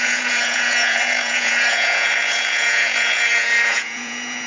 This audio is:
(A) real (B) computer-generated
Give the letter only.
B